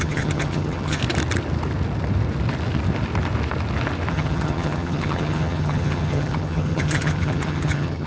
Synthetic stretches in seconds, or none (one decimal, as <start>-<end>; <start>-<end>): 0.0-1.0; 4.1-8.1